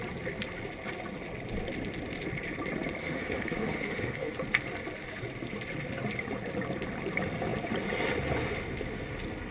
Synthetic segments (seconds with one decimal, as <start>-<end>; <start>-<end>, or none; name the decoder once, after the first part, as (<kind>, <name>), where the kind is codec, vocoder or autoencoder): 3.0-4.3 (autoencoder, DAC-VAE)